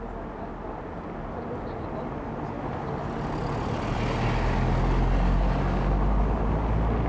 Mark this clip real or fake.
real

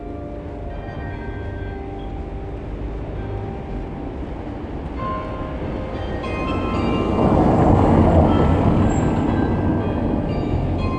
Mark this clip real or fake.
real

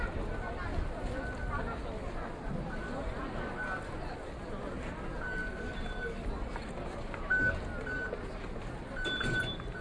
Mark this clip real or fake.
real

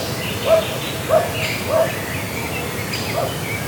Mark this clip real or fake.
real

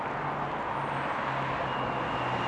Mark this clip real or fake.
real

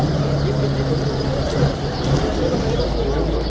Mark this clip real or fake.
real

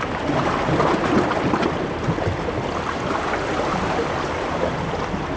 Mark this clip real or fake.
real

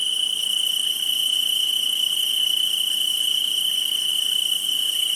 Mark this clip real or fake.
fake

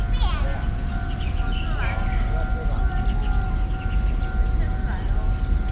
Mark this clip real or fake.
real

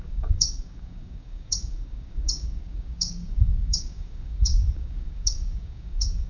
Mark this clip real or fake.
fake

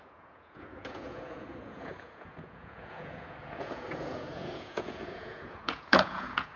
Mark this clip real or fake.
fake